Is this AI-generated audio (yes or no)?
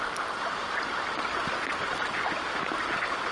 no